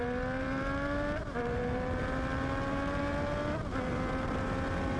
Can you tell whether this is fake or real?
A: fake